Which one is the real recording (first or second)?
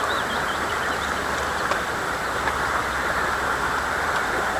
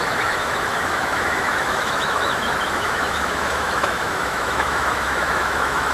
first